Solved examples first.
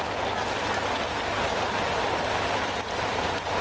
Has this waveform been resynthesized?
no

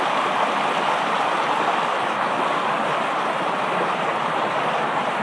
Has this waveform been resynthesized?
no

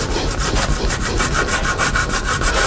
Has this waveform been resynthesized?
no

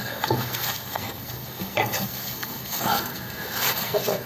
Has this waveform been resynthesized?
yes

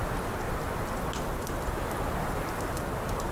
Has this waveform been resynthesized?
no